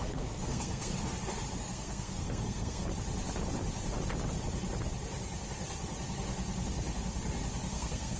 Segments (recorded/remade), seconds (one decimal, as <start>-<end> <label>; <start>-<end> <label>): 0.0-0.9 remade; 0.9-1.6 recorded; 1.6-2.8 remade; 2.8-7.7 recorded; 7.7-8.2 remade